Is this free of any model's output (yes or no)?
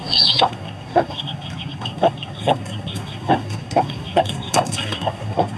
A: no